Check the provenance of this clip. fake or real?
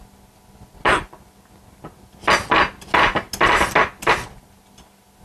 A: real